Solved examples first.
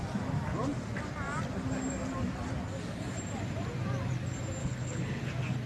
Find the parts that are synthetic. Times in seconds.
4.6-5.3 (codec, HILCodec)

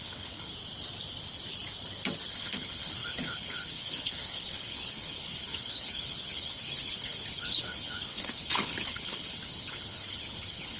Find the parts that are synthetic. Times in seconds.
0.0-0.5 (codec, HILCodec); 2.3-10.8